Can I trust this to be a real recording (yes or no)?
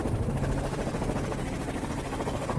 yes